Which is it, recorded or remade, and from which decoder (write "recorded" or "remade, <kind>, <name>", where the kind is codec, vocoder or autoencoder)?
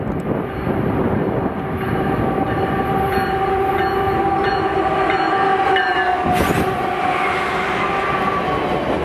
recorded